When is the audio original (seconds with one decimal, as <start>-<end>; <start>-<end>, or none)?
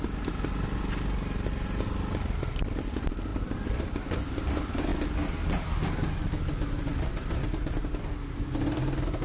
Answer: 0.0-6.9; 7.9-9.2